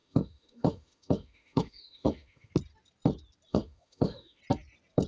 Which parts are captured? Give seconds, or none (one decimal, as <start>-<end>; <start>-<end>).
2.5-3.5; 4.4-5.1